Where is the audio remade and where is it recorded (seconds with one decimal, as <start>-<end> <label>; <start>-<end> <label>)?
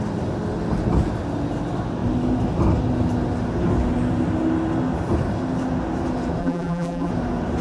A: 0.0-6.4 recorded; 6.4-7.1 remade; 7.1-7.6 recorded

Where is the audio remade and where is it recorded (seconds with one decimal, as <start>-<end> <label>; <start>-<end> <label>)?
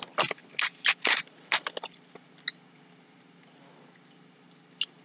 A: 0.0-5.0 recorded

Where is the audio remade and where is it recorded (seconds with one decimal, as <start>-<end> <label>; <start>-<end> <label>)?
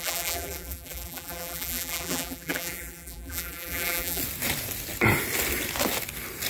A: 0.0-4.2 remade; 4.2-6.5 recorded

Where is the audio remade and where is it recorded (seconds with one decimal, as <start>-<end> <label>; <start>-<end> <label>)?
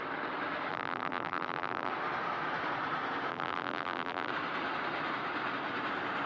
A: 0.0-0.7 recorded; 0.7-1.9 remade; 1.9-3.3 recorded; 3.3-4.3 remade; 4.3-6.3 recorded